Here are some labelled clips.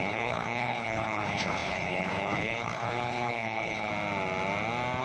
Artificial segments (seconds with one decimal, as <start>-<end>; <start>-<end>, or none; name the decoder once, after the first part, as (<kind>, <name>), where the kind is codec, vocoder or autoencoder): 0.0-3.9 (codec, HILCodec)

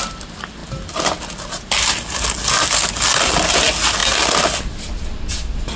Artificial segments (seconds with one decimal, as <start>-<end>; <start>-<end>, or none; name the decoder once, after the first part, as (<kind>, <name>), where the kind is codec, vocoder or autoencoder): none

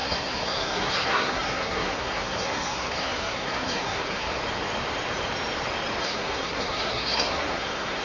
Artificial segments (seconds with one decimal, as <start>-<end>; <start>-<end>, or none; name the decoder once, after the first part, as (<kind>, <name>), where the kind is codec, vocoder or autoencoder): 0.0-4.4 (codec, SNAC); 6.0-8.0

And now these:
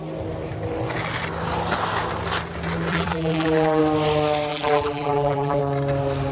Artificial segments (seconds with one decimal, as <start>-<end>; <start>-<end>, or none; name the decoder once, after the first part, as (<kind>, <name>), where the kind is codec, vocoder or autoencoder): 2.9-3.8 (vocoder, BigVGAN v2); 4.5-5.6

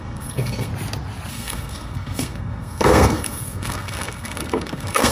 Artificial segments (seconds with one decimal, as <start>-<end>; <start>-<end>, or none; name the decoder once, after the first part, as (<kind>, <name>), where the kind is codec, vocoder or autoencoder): 0.0-0.7 (codec, SNAC); 1.3-5.1

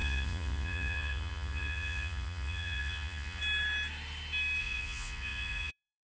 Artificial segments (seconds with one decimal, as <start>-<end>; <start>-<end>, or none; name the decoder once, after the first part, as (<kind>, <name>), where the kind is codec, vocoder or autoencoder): 0.0-3.4 (vocoder, Vocos); 4.6-6.1

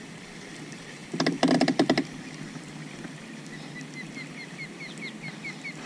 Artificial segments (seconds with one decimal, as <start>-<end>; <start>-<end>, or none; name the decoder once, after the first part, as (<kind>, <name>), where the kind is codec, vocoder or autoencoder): none